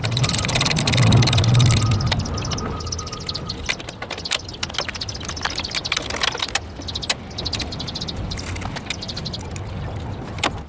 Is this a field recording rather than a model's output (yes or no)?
yes